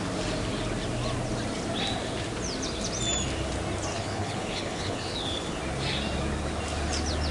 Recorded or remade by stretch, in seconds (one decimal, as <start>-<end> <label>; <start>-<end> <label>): 0.0-3.9 recorded; 3.9-5.6 remade; 5.6-7.3 recorded